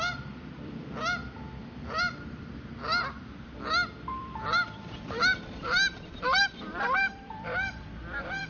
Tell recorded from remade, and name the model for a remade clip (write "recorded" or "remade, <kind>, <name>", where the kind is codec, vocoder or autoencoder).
remade, vocoder, BigVGAN v2